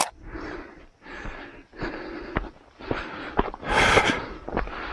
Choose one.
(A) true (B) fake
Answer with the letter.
A